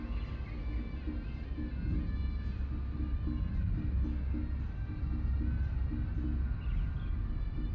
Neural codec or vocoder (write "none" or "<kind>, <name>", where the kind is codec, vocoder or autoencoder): none